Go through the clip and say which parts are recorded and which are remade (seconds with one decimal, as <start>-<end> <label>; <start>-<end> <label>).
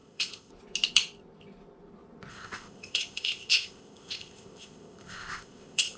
0.0-0.5 remade; 0.5-2.3 recorded; 2.3-6.0 remade